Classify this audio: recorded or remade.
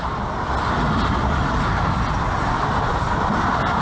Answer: recorded